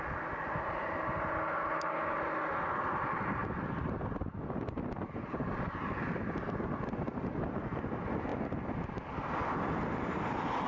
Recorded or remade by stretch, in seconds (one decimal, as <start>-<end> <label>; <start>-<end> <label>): 0.0-10.7 recorded